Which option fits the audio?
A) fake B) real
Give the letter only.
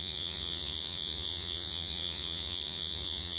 A